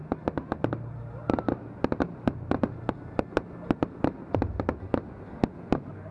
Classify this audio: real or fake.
real